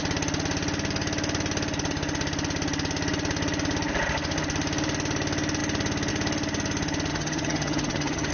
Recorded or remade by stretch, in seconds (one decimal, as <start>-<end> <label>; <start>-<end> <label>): 0.0-7.1 recorded; 7.1-8.3 remade